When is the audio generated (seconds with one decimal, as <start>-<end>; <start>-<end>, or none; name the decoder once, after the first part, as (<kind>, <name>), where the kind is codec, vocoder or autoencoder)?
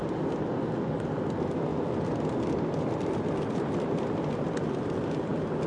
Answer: none